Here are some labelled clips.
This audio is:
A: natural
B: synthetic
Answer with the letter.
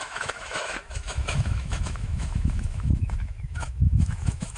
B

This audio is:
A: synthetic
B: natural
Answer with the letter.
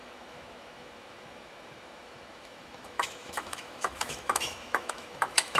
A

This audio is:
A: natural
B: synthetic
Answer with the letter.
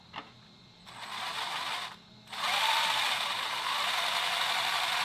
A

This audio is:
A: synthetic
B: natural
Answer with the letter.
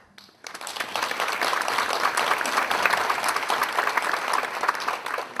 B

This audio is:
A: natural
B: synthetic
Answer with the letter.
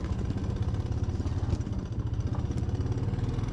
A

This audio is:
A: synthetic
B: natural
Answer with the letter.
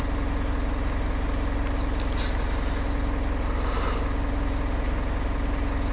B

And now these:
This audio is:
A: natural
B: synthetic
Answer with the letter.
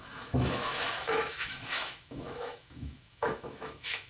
B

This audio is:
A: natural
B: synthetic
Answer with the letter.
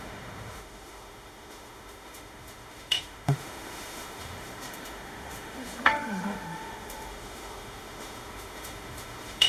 B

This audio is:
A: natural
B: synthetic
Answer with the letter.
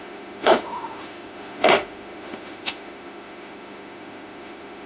B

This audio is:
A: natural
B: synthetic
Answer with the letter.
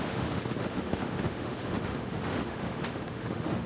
B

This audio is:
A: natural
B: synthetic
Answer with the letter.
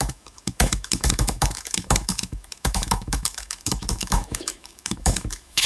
B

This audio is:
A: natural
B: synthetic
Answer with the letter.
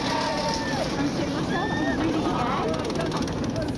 A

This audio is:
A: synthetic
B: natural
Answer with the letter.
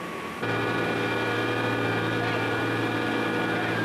B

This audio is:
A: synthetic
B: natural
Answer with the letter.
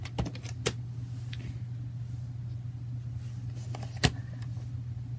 B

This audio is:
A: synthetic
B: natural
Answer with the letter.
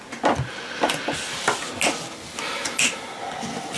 B